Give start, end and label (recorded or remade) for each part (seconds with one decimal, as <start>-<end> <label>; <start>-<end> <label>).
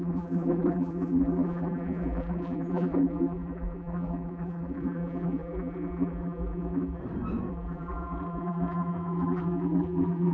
0.0-7.0 remade; 7.0-7.5 recorded; 7.5-10.3 remade